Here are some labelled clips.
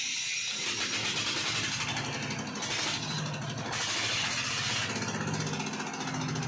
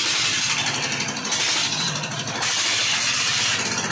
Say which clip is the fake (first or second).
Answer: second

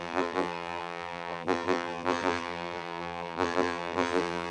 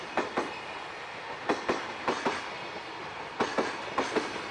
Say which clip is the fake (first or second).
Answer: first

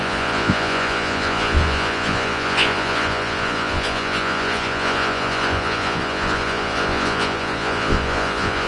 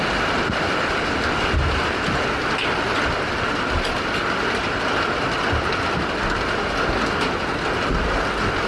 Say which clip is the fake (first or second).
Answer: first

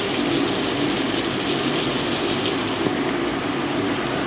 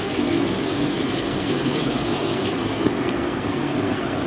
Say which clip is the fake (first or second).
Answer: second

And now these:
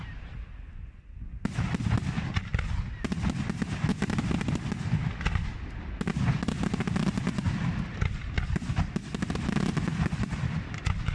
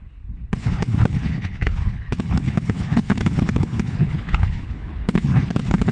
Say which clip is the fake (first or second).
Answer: second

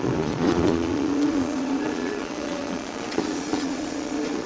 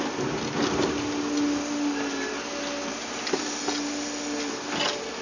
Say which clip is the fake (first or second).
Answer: first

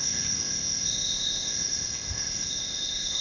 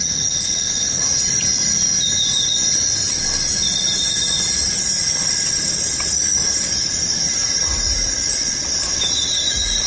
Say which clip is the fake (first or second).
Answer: first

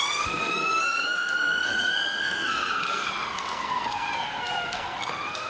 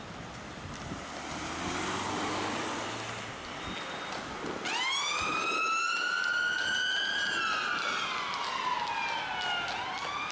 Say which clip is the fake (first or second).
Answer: first